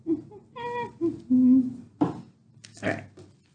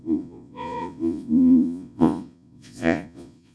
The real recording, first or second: first